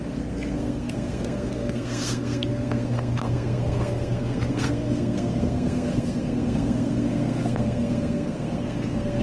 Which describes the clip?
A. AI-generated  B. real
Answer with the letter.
A